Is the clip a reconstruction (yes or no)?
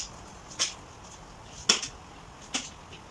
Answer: no